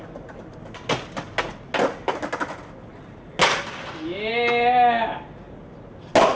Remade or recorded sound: recorded